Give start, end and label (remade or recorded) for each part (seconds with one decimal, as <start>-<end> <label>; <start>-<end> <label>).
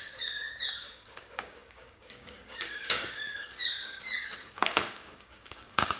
0.0-6.0 remade